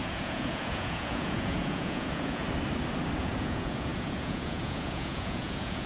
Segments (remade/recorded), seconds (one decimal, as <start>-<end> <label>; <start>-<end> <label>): 0.0-2.4 remade; 2.4-3.2 recorded; 3.2-5.9 remade

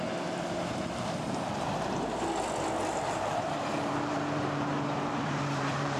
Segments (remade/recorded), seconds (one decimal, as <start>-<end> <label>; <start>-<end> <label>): 0.0-2.8 recorded; 2.8-6.0 remade

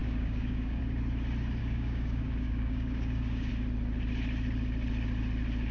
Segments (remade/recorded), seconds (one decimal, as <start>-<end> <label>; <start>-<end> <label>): 0.0-0.8 remade; 0.8-1.6 recorded; 1.6-3.5 remade; 3.5-5.7 recorded

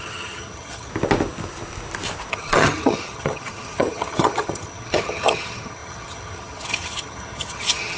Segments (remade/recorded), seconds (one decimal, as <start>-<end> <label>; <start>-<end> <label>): 0.0-0.9 remade; 0.9-2.3 recorded; 2.3-8.0 remade